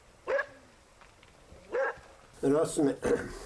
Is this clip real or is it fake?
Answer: real